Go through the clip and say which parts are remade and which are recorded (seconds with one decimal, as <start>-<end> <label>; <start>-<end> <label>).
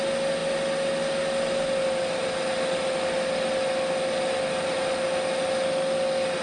0.0-6.4 recorded